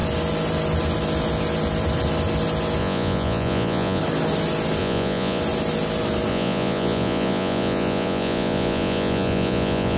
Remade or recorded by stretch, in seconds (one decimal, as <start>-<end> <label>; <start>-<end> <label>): 0.0-2.8 recorded; 2.8-4.0 remade; 4.0-4.8 recorded; 4.8-5.4 remade; 5.4-6.3 recorded; 6.3-10.0 remade